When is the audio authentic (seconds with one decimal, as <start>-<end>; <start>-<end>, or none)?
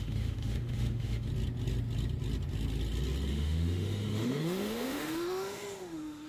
1.3-3.3